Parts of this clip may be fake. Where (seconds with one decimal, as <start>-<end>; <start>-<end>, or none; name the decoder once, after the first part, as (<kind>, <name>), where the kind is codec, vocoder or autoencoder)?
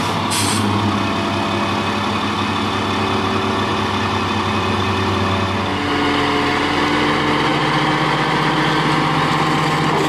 none